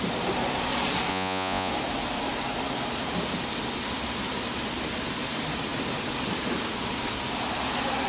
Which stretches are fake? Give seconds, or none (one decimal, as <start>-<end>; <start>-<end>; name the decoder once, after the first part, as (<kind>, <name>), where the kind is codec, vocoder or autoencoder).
1.1-1.7 (vocoder, Vocos)